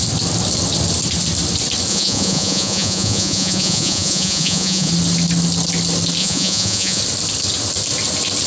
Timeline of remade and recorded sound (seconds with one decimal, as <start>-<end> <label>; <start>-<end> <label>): 0.0-1.9 recorded; 1.9-4.9 remade; 4.9-6.2 recorded; 6.2-7.0 remade; 7.0-8.5 recorded

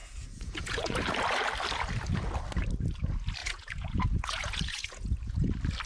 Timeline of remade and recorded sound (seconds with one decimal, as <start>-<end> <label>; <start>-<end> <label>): 0.0-1.1 remade; 1.1-3.4 recorded; 3.4-5.5 remade; 5.5-5.9 recorded